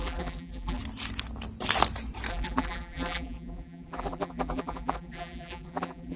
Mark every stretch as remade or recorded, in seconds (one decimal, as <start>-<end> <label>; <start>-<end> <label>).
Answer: 0.0-0.8 remade; 0.8-2.3 recorded; 2.3-6.2 remade